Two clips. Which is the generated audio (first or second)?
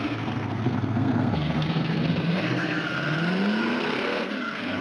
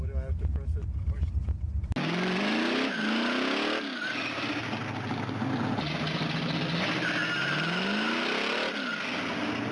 first